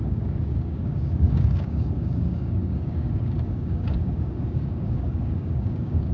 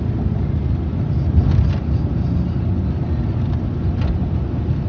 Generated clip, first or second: first